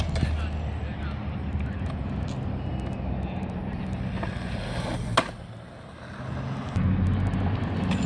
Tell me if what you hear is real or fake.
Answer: real